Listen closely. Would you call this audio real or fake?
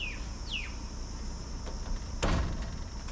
real